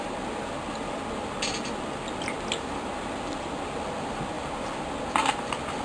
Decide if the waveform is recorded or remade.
recorded